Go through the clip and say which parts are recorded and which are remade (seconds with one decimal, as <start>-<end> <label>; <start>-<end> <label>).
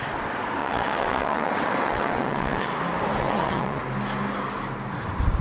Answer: 0.0-0.6 recorded; 0.6-2.7 remade; 2.7-3.2 recorded; 3.2-3.8 remade; 3.8-5.4 recorded